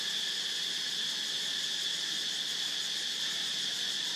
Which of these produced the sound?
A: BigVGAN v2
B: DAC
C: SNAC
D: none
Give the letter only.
D